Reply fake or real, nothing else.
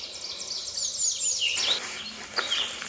real